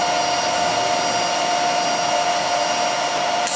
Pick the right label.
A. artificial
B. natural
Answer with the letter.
B